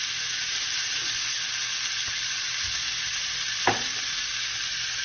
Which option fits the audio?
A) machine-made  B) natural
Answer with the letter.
B